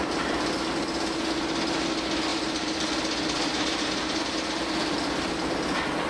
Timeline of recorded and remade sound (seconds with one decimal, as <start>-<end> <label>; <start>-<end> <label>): 0.0-2.3 recorded; 2.3-4.2 remade; 4.2-6.1 recorded